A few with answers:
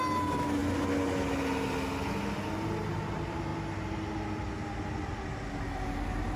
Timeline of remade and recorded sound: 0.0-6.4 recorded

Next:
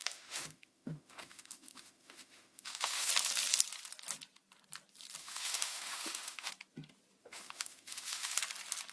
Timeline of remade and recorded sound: 0.0-3.1 remade; 3.1-5.2 recorded; 5.2-6.5 remade; 6.5-7.2 recorded; 7.2-8.4 remade; 8.4-8.9 recorded

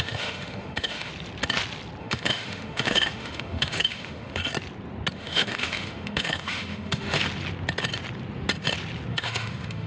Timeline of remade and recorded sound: 0.0-1.1 remade; 1.1-2.0 recorded; 2.0-4.4 remade; 4.4-5.1 recorded; 5.1-7.2 remade; 7.2-9.1 recorded; 9.1-9.9 remade